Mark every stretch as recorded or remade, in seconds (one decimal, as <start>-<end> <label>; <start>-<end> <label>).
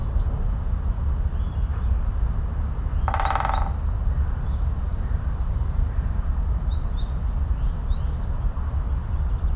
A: 0.0-9.6 recorded